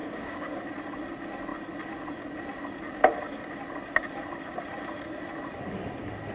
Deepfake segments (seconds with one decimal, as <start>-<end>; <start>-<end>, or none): 0.0-0.6